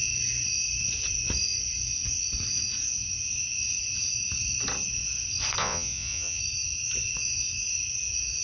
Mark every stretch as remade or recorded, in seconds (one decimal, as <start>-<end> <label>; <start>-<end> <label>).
0.0-5.6 recorded; 5.6-6.4 remade; 6.4-8.4 recorded